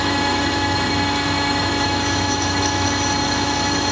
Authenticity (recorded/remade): remade